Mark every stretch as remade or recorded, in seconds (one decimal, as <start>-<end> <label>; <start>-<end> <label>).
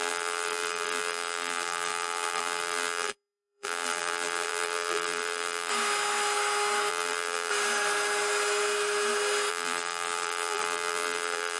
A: 0.0-5.7 remade; 5.7-6.9 recorded; 6.9-7.5 remade; 7.5-9.5 recorded; 9.5-11.6 remade